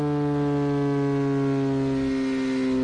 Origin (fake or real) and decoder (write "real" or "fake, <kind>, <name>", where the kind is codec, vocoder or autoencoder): real